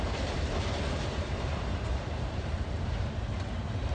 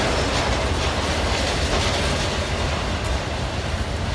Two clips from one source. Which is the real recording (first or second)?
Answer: second